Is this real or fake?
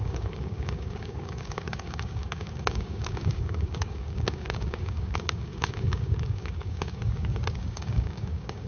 fake